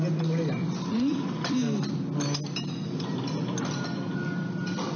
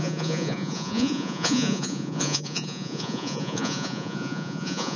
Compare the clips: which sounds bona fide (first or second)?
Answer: first